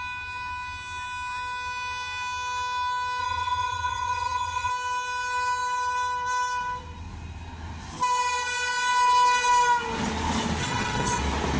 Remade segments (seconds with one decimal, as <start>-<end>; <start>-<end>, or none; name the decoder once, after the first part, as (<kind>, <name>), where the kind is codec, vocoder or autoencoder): 3.2-4.7 (vocoder, HiFi-GAN); 10.6-11.2